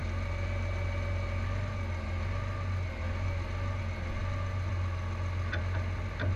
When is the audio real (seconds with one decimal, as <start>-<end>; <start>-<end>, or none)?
0.0-6.4